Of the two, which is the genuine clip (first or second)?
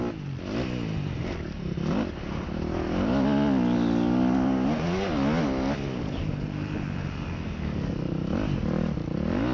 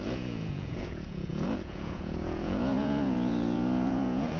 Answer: first